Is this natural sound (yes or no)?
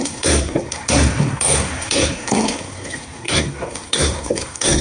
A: no